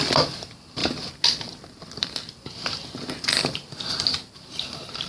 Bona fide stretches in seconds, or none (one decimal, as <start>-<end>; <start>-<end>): 0.0-5.1